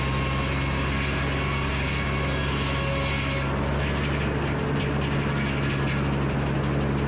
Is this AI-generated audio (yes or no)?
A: no